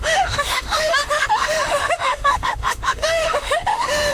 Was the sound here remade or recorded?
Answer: remade